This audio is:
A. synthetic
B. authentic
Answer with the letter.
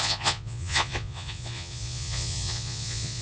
A